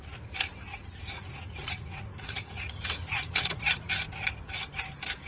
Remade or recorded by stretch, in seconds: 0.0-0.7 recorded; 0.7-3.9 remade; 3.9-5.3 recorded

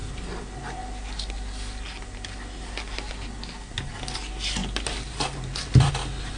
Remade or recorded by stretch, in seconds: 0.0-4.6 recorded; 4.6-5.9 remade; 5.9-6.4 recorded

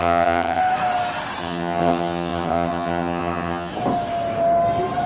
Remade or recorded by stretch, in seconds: 0.0-0.6 remade; 0.6-1.4 recorded; 1.4-3.7 remade; 3.7-5.1 recorded

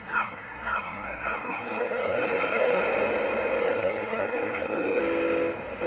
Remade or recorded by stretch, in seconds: 0.0-2.8 remade; 2.8-3.6 recorded; 3.6-5.0 remade; 5.0-5.9 recorded

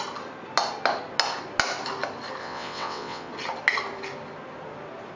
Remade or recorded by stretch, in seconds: 0.0-2.4 recorded; 2.4-3.3 remade; 3.3-5.2 recorded